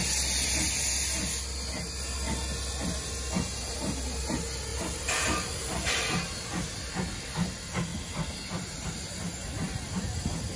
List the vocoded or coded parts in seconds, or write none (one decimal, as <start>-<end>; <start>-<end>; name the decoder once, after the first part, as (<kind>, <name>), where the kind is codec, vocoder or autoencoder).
4.7-6.0 (vocoder, BigVGAN v2)